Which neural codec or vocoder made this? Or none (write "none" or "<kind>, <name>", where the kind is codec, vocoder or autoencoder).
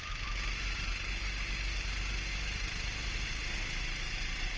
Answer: none